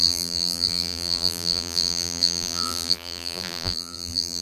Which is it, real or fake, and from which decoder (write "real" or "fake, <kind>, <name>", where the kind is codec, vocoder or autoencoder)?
fake, vocoder, BigVGAN v2